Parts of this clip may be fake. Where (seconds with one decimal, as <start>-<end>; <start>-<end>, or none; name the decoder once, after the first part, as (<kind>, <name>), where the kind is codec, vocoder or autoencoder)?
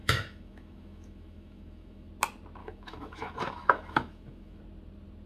0.0-2.1 (autoencoder, DAC-VAE); 2.6-4.6